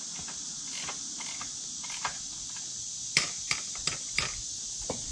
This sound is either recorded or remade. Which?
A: recorded